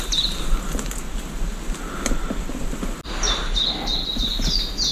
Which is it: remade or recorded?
recorded